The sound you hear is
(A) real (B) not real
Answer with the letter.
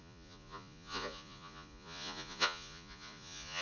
B